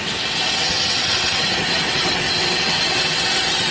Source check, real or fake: fake